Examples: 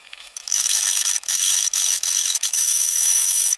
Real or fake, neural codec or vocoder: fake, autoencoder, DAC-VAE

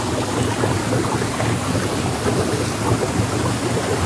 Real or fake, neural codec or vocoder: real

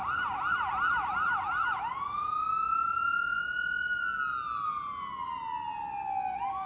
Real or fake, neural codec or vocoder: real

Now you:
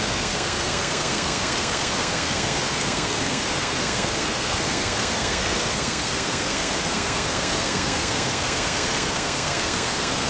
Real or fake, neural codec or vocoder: fake, codec, SNAC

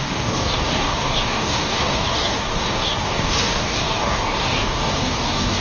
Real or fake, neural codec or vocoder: fake, codec, DAC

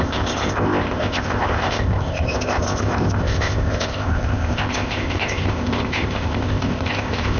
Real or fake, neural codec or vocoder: fake, codec, ZipCodec